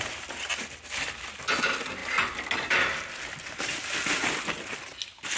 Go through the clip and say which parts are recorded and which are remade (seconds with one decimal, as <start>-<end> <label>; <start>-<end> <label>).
0.0-5.4 recorded